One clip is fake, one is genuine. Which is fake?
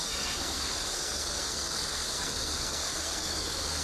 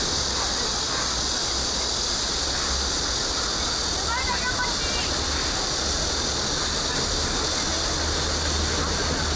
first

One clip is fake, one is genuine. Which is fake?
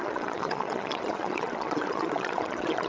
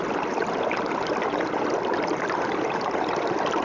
first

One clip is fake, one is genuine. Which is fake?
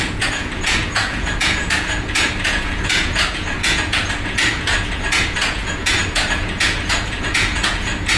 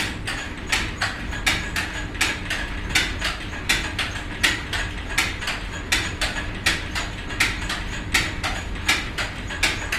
first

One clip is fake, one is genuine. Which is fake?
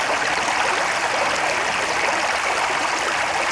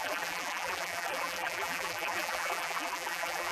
second